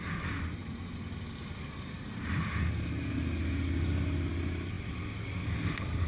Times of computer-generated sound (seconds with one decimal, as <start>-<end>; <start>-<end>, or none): none